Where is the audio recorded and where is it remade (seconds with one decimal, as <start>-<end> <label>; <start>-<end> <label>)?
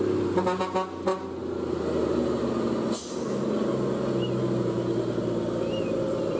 0.0-6.4 recorded